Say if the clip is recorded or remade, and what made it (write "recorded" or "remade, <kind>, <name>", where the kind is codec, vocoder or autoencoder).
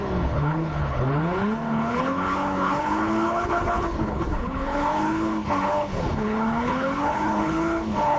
remade, codec, HILCodec